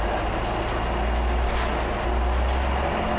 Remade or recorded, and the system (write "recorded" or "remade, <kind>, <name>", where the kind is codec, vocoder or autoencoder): recorded